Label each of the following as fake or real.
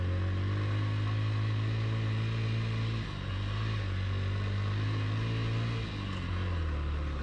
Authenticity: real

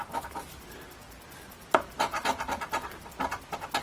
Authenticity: real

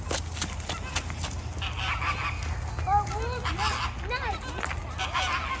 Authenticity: real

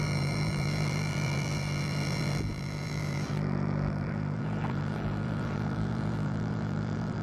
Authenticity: fake